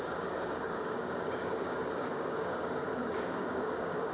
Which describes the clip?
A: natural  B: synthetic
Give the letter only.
B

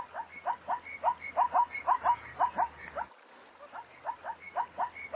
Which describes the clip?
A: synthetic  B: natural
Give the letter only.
B